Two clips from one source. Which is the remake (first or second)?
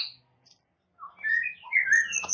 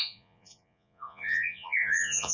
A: second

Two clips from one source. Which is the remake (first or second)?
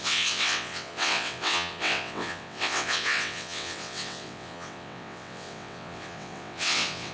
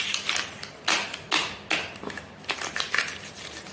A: first